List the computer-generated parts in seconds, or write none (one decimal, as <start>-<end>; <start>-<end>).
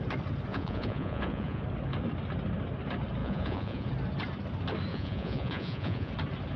0.5-1.6; 3.2-3.9; 4.9-6.1